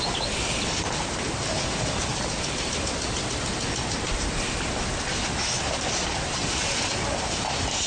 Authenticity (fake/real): real